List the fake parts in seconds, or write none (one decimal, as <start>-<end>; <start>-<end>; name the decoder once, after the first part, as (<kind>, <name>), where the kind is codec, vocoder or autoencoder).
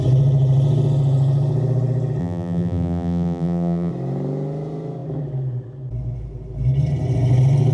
2.2-3.9 (vocoder, BigVGAN v2)